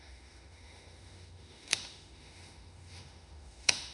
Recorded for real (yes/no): no